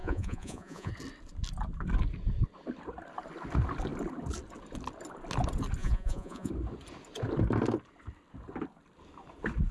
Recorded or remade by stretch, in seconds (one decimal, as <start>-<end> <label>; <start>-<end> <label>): 0.0-0.9 remade; 0.9-5.8 recorded; 5.8-6.5 remade; 6.5-9.7 recorded